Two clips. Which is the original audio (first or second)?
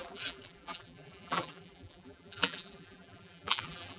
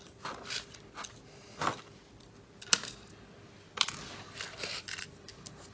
second